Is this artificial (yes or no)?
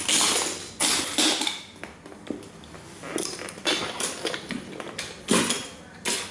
no